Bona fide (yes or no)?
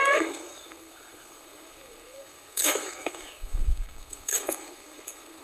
no